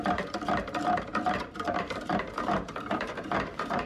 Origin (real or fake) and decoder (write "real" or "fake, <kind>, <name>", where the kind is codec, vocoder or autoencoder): fake, vocoder, BigVGAN v2